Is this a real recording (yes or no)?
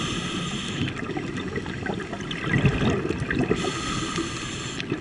yes